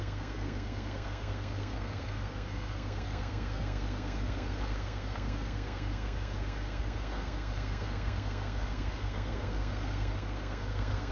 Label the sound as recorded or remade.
remade